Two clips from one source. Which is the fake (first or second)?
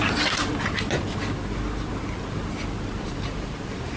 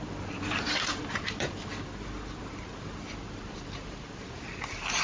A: second